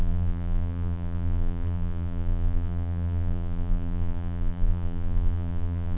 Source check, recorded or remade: remade